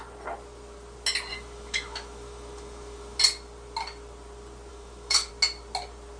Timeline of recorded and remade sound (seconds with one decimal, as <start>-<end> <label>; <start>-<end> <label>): 0.0-1.3 recorded; 1.3-3.2 remade; 3.2-4.7 recorded; 4.7-5.3 remade; 5.3-6.2 recorded